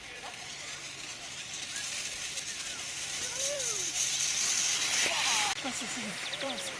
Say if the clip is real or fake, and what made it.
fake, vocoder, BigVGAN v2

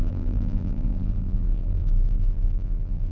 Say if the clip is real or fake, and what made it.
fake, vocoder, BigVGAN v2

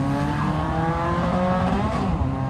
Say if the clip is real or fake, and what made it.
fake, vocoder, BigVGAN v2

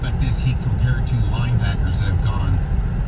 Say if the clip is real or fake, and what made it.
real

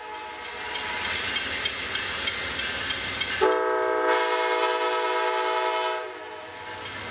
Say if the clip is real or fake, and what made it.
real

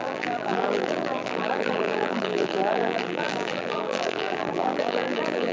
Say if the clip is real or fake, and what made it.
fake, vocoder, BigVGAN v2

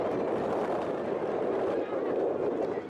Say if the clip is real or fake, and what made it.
real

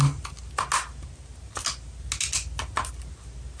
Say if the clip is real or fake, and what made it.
real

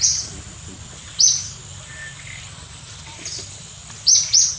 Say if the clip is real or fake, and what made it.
fake, vocoder, BigVGAN v2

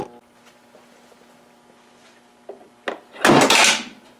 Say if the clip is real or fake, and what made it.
real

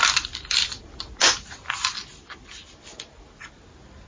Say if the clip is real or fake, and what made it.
real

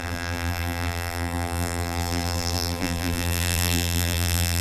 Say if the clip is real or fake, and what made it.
fake, vocoder, BigVGAN v2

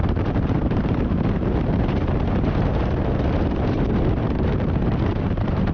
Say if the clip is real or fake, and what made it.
fake, vocoder, BigVGAN v2